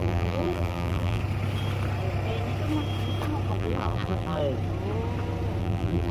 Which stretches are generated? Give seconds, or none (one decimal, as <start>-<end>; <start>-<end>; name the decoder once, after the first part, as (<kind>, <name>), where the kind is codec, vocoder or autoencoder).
0.0-1.2 (vocoder, BigVGAN v2); 3.5-4.4; 5.6-6.1